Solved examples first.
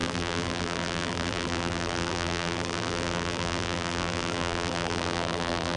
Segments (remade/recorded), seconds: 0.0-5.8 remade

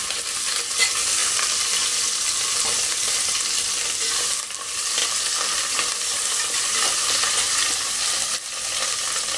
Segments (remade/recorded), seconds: 0.0-1.2 recorded; 1.2-4.5 remade; 4.5-5.0 recorded; 5.0-6.7 remade; 6.7-9.4 recorded

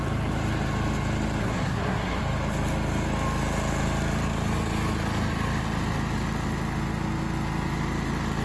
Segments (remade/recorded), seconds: 0.0-1.4 recorded; 1.4-2.2 remade; 2.2-8.4 recorded

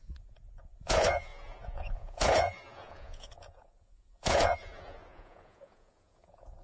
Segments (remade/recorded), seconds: 0.0-6.6 remade

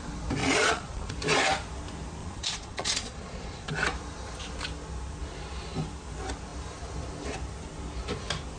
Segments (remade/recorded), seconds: 0.0-0.4 recorded; 0.4-1.1 remade; 1.1-2.2 recorded; 2.2-3.7 remade; 3.7-8.6 recorded

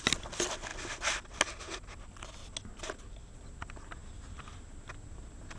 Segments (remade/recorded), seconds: 0.0-5.6 recorded

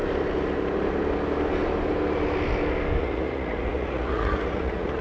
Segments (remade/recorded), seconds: 0.0-3.0 recorded; 3.0-5.0 remade

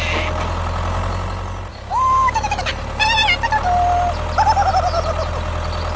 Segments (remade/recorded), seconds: 0.0-1.7 recorded; 1.7-2.7 remade; 2.7-6.0 recorded